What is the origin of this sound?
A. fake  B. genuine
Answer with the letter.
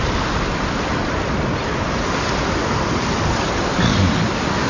B